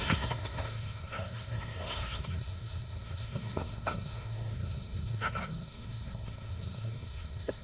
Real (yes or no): no